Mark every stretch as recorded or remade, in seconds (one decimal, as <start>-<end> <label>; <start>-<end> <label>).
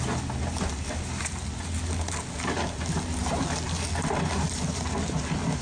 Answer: 0.0-5.6 recorded